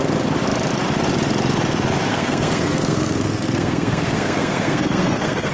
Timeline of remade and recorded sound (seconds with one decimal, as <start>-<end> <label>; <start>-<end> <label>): 0.0-2.1 recorded; 2.1-5.5 remade